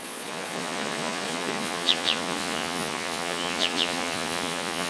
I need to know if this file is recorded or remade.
remade